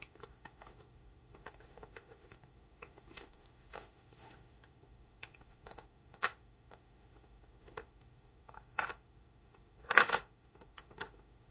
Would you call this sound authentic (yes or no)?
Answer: no